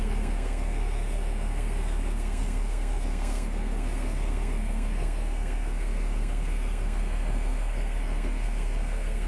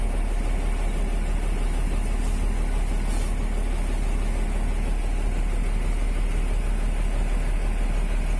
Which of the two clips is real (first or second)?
second